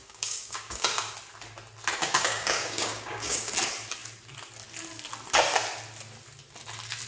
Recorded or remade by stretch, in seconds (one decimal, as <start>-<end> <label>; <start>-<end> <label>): 0.0-1.1 remade; 1.1-2.0 recorded; 2.0-3.5 remade; 3.5-7.1 recorded